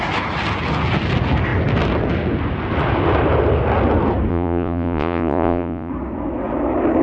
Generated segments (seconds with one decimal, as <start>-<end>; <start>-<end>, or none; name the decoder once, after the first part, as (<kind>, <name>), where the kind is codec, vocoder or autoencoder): 4.3-5.9 (vocoder, Vocos)